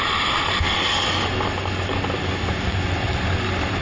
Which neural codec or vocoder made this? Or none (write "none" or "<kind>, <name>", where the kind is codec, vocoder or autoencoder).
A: none